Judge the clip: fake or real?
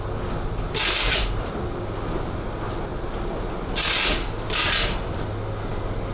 real